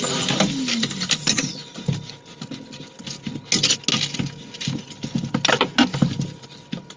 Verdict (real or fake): real